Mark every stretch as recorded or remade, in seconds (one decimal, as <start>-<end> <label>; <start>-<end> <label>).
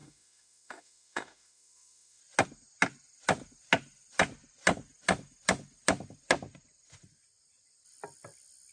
0.0-2.2 remade; 2.2-8.7 recorded